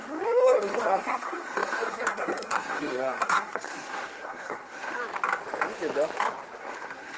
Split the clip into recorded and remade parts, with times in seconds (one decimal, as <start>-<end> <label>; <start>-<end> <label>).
0.0-5.0 remade; 5.0-6.6 recorded; 6.6-7.2 remade